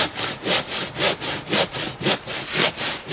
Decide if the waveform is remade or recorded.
recorded